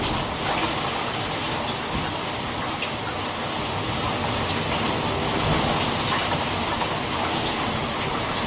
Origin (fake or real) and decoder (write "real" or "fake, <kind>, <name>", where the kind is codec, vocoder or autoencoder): real